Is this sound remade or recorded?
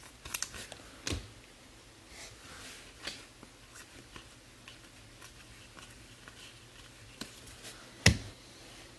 recorded